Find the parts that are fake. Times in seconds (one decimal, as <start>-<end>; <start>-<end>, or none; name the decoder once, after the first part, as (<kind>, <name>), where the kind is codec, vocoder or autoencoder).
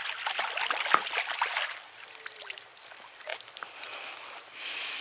none